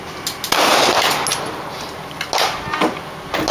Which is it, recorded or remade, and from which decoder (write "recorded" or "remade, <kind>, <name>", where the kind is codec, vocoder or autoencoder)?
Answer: recorded